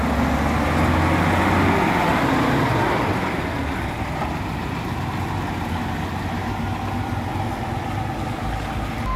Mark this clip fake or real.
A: real